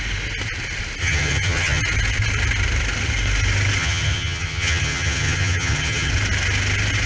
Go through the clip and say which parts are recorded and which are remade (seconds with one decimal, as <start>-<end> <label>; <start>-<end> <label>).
0.0-1.0 recorded; 1.0-1.8 remade; 1.8-3.8 recorded; 3.8-6.1 remade; 6.1-7.1 recorded